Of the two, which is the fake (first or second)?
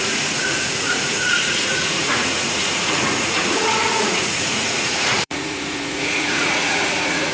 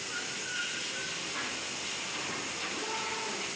first